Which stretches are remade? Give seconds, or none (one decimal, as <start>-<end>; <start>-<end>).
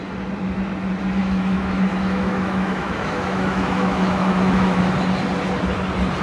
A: 1.2-4.8